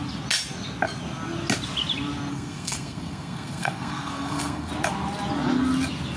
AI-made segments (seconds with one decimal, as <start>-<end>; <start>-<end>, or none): 2.3-4.7